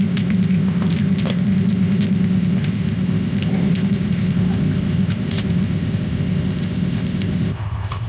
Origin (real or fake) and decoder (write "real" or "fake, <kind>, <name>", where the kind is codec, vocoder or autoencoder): fake, codec, ZipCodec